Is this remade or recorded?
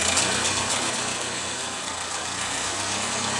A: remade